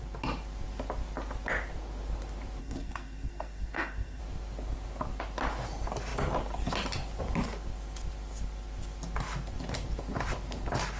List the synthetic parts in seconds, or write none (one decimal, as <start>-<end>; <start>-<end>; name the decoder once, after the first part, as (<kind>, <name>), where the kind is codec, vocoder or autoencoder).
2.6-4.2 (codec, SNAC)